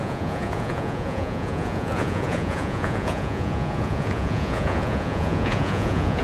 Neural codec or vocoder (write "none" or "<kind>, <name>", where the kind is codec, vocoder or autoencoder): vocoder, Vocos